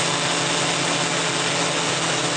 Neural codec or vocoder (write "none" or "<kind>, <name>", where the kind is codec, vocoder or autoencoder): none